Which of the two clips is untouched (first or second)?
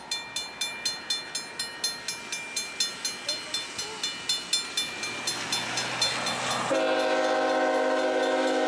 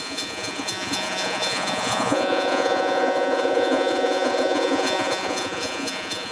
first